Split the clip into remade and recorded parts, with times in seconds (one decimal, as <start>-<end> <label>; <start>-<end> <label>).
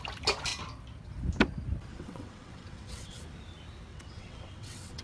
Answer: 0.0-1.9 recorded; 1.9-3.2 remade; 3.2-3.9 recorded; 3.9-5.0 remade